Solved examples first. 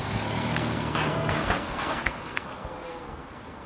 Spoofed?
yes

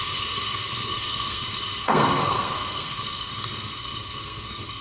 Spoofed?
yes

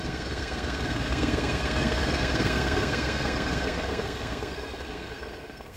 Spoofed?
yes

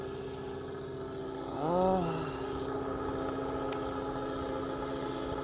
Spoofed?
no